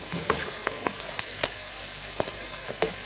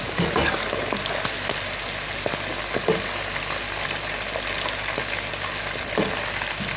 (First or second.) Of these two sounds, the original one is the second